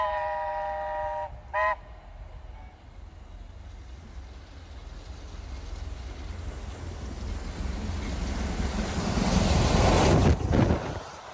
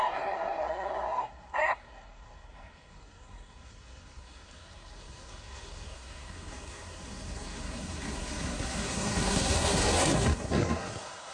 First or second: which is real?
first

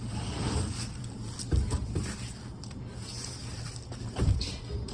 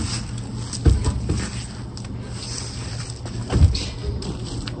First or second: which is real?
second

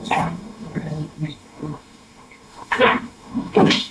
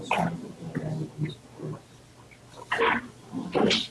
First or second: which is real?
second